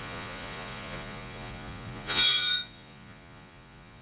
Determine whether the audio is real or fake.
fake